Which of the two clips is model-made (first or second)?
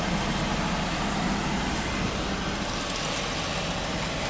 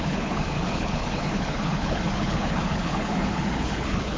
second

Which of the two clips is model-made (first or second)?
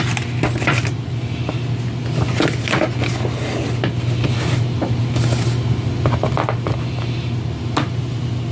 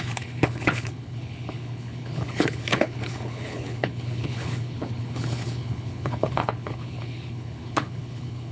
second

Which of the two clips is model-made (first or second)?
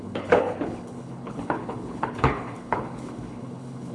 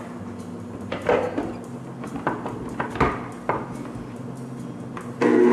first